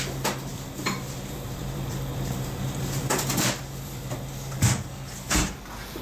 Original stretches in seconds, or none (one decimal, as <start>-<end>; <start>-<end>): 0.0-0.5; 4.1-6.0